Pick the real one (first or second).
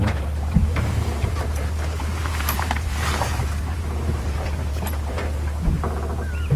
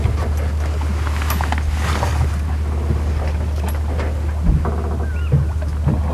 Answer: second